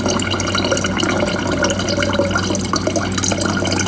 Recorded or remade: recorded